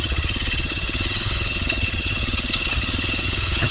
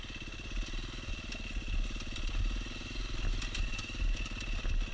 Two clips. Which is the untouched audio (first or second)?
second